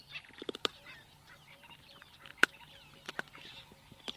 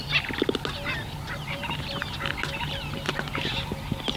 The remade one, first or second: first